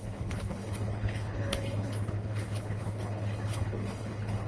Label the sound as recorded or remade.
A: remade